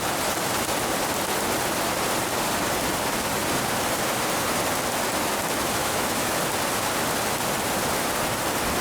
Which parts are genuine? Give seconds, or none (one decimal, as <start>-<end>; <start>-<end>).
0.0-5.8; 6.4-8.8